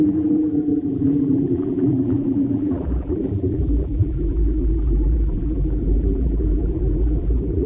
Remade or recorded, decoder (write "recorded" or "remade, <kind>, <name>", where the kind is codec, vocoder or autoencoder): remade, vocoder, BigVGAN v2